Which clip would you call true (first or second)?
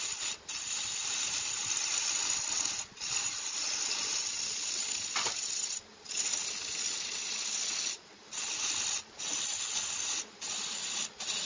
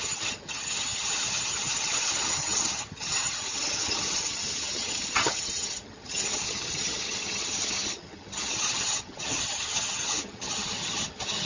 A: first